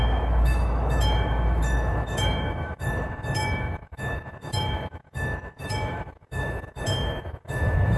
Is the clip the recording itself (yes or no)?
no